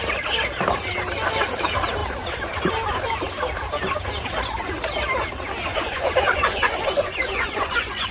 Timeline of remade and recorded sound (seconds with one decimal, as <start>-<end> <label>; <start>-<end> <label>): 0.0-5.7 recorded; 5.7-8.1 remade